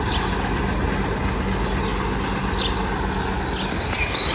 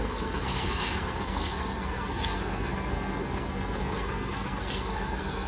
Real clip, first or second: first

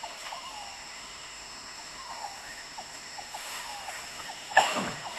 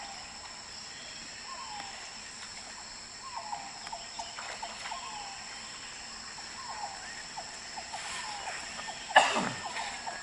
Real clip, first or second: second